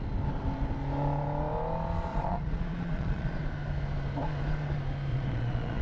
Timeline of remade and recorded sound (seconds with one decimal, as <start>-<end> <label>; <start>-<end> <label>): 0.0-2.1 recorded; 2.1-3.4 remade; 3.4-5.1 recorded; 5.1-5.8 remade